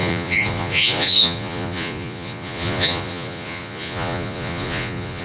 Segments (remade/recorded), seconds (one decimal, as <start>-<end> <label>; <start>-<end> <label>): 0.0-5.2 remade